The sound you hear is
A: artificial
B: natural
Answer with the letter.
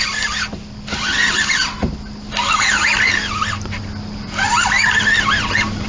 B